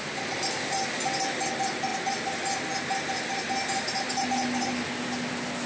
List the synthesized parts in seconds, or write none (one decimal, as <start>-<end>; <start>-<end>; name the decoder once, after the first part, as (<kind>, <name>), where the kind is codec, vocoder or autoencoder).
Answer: none